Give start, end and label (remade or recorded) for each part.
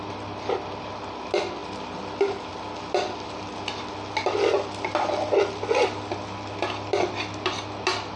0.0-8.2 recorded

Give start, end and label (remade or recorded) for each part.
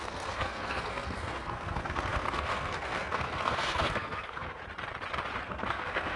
0.0-4.6 remade; 4.6-5.4 recorded; 5.4-6.2 remade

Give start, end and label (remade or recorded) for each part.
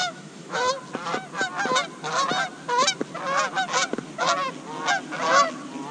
0.0-0.7 remade; 0.7-5.9 recorded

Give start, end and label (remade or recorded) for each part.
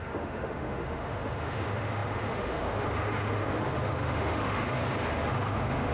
0.0-4.8 remade; 4.8-5.3 recorded; 5.3-5.9 remade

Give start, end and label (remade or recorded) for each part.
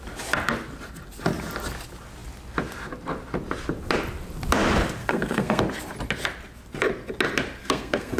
0.0-5.0 recorded; 5.0-5.6 remade; 5.6-7.6 recorded; 7.6-8.2 remade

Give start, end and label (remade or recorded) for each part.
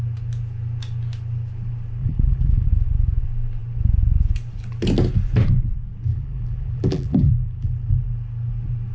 0.0-2.0 recorded; 2.0-2.7 remade; 2.7-6.1 recorded; 6.1-7.9 remade; 7.9-8.9 recorded